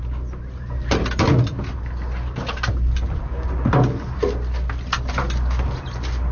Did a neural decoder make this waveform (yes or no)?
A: no